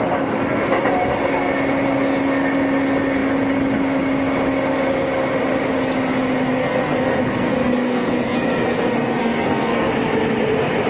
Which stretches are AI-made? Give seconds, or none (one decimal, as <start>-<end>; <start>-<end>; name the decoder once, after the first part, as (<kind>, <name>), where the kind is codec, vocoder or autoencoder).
6.6-9.9 (codec, SNAC)